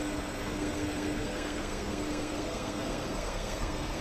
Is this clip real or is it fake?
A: fake